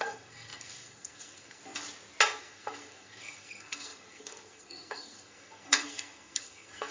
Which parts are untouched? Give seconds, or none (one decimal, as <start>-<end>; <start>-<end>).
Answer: 1.6-2.4